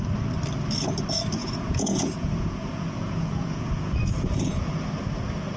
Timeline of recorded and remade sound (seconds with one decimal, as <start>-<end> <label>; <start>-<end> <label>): 0.0-1.4 recorded; 1.4-4.7 remade; 4.7-5.6 recorded